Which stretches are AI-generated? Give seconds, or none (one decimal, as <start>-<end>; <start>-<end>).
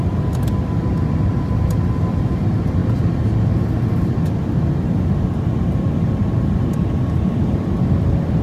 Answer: 0.0-2.8; 6.3-8.4